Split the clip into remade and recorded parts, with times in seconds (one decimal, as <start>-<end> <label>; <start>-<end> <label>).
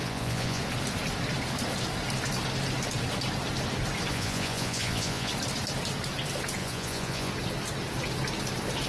0.0-0.6 remade; 0.6-4.1 recorded; 4.1-5.3 remade; 5.3-6.6 recorded; 6.6-7.3 remade; 7.3-8.9 recorded